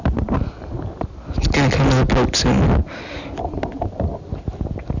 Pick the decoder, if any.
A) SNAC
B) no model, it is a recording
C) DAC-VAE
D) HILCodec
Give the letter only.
B